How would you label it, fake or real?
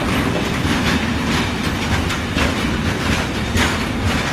real